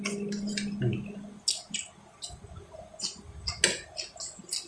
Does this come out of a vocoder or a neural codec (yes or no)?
no